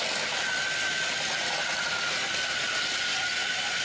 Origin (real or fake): real